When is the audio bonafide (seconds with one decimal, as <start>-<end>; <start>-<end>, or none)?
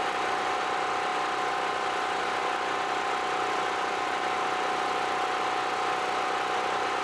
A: 0.0-7.0